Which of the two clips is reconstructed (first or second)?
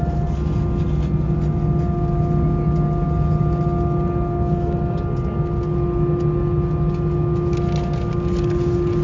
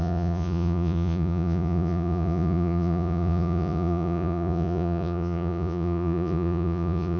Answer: second